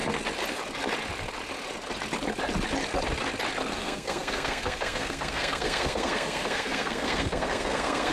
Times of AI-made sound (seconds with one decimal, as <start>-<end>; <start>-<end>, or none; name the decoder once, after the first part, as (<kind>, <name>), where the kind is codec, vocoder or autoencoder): 3.7-8.1 (codec, SNAC)